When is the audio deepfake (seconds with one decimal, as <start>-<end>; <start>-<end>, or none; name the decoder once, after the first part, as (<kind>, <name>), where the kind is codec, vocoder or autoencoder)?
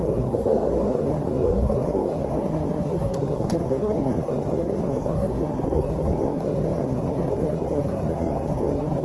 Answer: 0.0-9.0 (codec, SNAC)